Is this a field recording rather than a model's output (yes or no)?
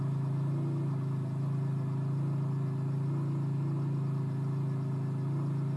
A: yes